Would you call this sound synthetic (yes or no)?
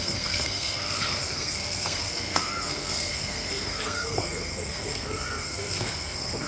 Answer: yes